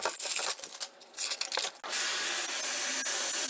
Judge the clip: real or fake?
real